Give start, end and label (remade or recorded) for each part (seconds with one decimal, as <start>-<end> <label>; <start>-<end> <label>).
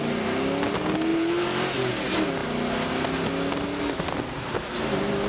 0.0-1.1 recorded; 1.1-1.9 remade; 1.9-5.3 recorded